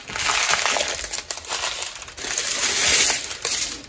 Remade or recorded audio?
recorded